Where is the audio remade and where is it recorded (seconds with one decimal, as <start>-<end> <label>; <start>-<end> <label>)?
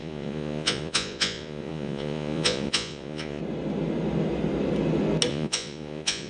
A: 0.0-3.4 remade; 3.4-5.3 recorded; 5.3-6.3 remade